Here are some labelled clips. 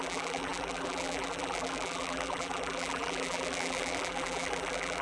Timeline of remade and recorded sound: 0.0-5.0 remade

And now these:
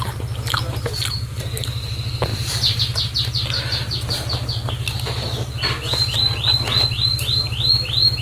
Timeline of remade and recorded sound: 0.0-2.3 recorded; 2.3-2.8 remade; 2.8-8.2 recorded

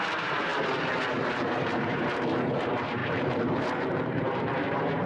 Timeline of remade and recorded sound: 0.0-0.5 remade; 0.5-1.1 recorded; 1.1-5.1 remade